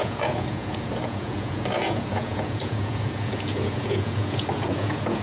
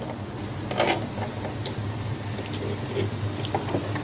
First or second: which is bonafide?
second